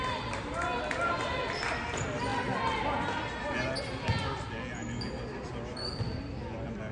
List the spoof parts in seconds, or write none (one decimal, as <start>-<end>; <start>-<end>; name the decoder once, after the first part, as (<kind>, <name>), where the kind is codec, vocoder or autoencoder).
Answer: none